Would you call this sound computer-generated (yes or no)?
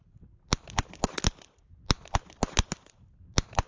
no